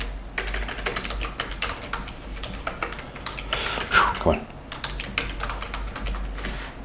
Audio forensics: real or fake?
real